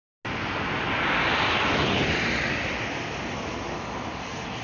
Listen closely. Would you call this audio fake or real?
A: real